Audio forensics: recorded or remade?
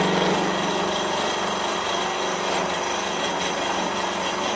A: recorded